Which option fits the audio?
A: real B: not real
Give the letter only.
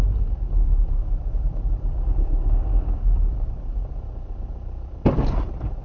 B